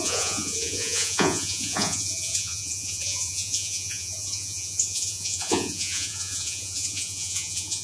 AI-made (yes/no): yes